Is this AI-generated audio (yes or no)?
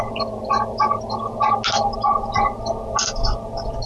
no